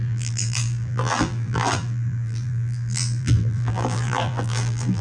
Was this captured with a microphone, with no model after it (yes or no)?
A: no